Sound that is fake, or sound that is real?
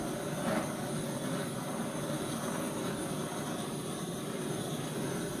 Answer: real